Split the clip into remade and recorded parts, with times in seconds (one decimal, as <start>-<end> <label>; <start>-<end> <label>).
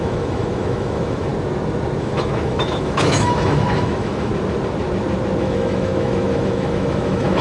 0.0-1.3 remade; 1.3-2.0 recorded; 2.0-4.3 remade; 4.3-5.4 recorded; 5.4-7.4 remade